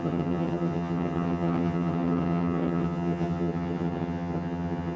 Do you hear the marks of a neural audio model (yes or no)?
yes